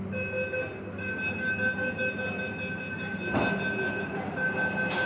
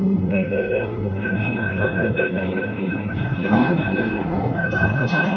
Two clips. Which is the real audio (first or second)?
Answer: first